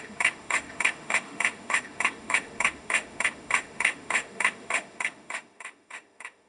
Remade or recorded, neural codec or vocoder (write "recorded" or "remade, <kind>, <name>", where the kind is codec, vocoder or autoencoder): remade, autoencoder, DAC-VAE